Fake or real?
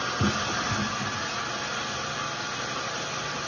real